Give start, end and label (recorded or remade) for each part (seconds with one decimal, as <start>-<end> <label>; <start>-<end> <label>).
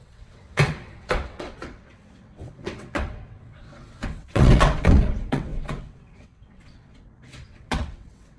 0.0-8.4 remade